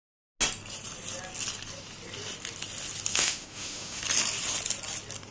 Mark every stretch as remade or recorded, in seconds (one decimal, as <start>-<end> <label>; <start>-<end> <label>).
0.0-3.1 recorded; 3.1-4.0 remade; 4.0-5.3 recorded